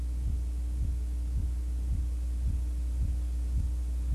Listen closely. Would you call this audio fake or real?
real